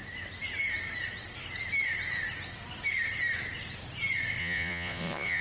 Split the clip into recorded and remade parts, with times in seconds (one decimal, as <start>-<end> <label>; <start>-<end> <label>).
0.0-4.4 recorded; 4.4-5.4 remade